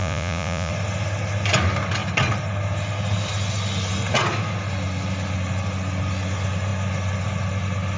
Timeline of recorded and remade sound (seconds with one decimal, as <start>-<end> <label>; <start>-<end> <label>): 0.0-0.7 remade; 0.7-8.0 recorded